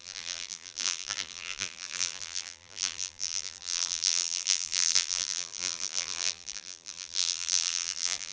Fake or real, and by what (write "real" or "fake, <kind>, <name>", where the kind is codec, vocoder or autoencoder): fake, vocoder, BigVGAN v2